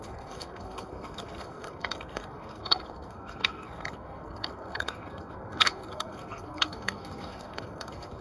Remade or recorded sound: remade